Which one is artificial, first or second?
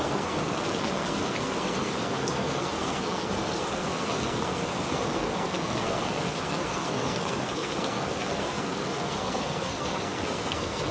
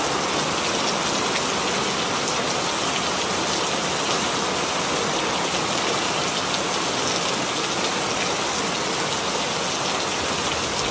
first